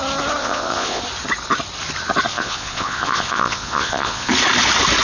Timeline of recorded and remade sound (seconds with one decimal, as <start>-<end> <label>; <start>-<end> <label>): 0.0-0.4 recorded; 0.4-1.0 remade; 1.0-2.3 recorded; 2.3-4.3 remade; 4.3-5.0 recorded

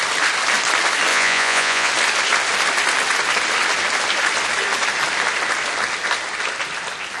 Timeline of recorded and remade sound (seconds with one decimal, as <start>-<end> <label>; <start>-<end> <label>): 0.0-1.1 recorded; 1.1-1.9 remade; 1.9-7.2 recorded

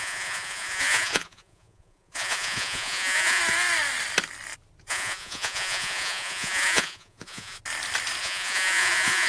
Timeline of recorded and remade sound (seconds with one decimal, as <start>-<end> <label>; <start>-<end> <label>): 0.0-3.4 remade; 3.4-4.8 recorded; 4.8-7.6 remade; 7.6-8.2 recorded; 8.2-9.3 remade

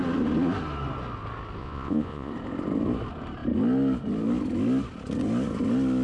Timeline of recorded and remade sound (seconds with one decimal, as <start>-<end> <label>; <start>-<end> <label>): 0.0-1.6 recorded; 1.6-2.3 remade; 2.3-6.0 recorded

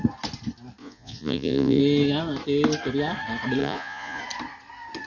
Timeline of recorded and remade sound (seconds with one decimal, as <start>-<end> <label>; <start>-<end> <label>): 0.0-0.8 recorded; 0.8-1.8 remade; 1.8-3.6 recorded; 3.6-4.2 remade; 4.2-5.1 recorded